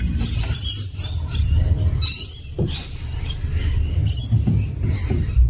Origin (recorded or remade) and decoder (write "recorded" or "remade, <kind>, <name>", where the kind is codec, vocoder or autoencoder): recorded